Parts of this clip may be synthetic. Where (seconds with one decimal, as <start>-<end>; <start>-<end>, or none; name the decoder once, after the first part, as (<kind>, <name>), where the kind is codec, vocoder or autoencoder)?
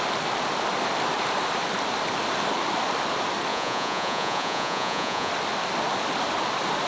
3.5-5.3 (vocoder, Vocos)